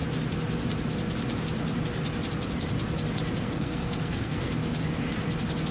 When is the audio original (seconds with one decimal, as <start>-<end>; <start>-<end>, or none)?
0.0-3.4; 4.6-5.7